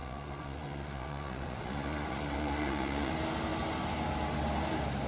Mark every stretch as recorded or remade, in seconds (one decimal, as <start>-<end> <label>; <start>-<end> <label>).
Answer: 0.0-3.1 remade; 3.1-5.1 recorded